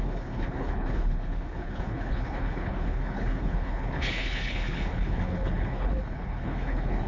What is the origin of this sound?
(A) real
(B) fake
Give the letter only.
B